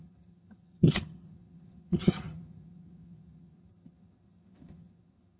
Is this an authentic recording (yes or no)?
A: no